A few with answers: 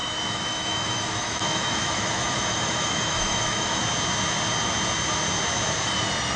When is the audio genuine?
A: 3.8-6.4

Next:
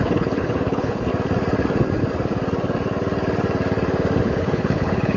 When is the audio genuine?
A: 1.1-4.2

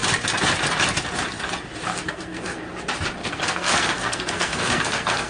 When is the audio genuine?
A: 0.0-1.9; 2.6-3.2

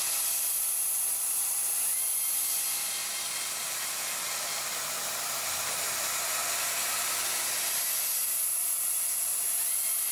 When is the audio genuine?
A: 0.0-3.6; 4.2-10.1

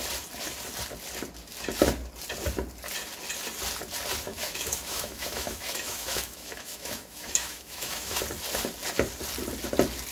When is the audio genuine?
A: 0.0-4.3; 8.2-10.1

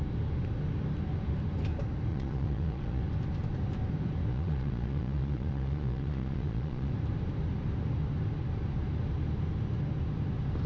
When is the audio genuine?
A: 0.0-2.1; 3.0-4.3; 6.9-10.7

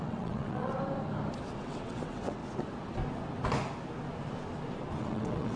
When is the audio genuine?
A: 0.7-1.6; 2.4-5.0

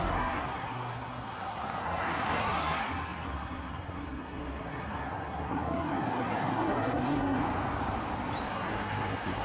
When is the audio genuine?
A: 7.4-8.5